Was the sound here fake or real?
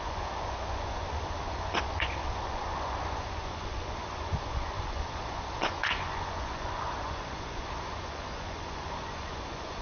fake